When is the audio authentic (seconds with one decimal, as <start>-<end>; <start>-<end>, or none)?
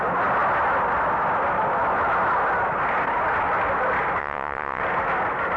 0.0-4.2; 4.8-5.6